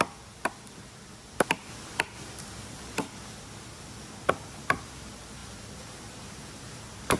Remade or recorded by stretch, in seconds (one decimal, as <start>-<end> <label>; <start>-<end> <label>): 0.0-7.2 recorded